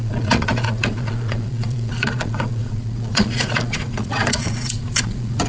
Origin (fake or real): fake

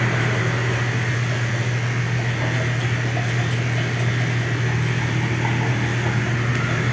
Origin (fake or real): real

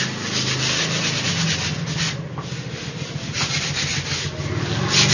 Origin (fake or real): real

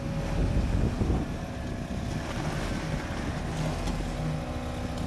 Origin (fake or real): real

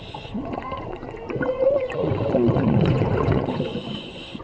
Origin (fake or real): fake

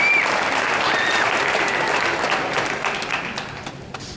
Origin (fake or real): real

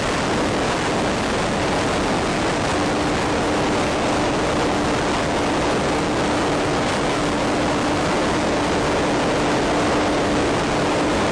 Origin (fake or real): real